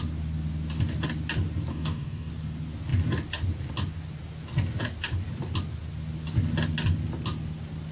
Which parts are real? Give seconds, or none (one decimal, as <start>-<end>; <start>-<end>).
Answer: 0.0-1.7; 2.3-7.9